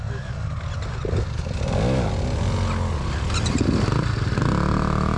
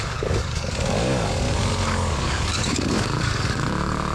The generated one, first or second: second